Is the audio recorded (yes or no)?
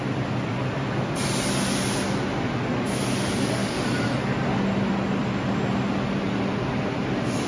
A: yes